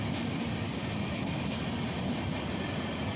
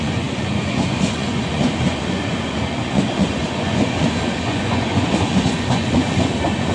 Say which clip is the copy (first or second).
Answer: second